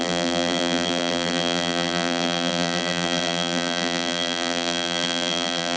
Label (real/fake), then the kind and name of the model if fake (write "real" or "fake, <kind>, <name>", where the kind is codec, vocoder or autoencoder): fake, vocoder, BigVGAN v2